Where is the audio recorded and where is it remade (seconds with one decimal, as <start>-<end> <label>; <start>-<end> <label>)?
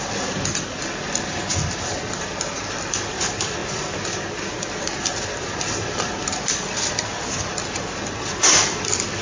0.0-9.2 recorded